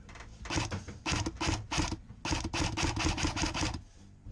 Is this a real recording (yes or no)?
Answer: yes